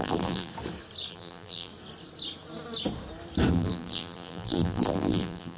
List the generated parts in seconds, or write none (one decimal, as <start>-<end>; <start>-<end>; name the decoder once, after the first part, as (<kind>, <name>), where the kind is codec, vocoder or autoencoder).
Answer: 0.0-0.5 (vocoder, BigVGAN v2); 1.1-1.7; 3.5-5.6

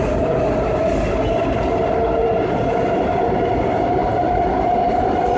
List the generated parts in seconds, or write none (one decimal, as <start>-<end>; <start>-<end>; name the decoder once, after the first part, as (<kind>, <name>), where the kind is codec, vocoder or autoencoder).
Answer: none

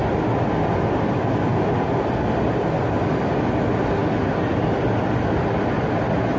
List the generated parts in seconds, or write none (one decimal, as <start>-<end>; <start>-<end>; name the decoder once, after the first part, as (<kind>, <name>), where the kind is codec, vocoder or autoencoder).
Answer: none

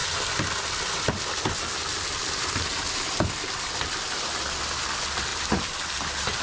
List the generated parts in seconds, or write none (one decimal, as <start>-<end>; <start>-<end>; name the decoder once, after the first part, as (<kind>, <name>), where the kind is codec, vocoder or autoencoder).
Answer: none

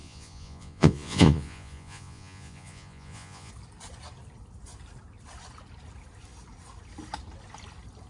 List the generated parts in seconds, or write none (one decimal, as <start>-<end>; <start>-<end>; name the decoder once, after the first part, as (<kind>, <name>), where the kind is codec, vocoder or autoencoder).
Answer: 0.0-3.5 (vocoder, Vocos)

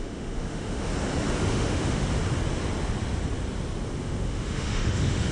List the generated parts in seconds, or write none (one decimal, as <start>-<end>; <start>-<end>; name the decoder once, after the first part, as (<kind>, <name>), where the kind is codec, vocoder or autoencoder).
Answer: 0.0-0.9 (autoencoder, DAC-VAE); 1.4-2.1; 4.0-5.3

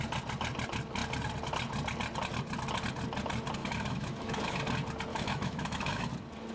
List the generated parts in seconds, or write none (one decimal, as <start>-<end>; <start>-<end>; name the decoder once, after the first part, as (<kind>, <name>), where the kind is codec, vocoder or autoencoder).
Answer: 3.6-4.6 (autoencoder, DAC-VAE); 5.1-6.1

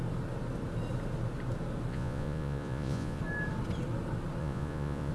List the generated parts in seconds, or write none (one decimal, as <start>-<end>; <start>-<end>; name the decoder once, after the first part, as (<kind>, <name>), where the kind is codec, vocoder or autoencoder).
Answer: 1.9-3.2 (vocoder, Vocos); 4.4-5.1